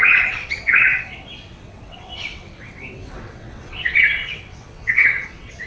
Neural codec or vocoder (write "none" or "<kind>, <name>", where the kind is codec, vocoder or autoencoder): vocoder, WaveNeXt